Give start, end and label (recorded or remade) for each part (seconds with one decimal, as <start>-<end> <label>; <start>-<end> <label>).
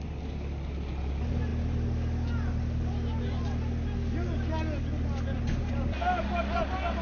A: 0.0-7.0 recorded